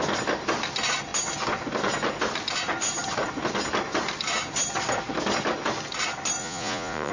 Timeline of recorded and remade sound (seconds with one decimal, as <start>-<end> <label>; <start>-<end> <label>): 0.0-6.4 recorded; 6.4-7.1 remade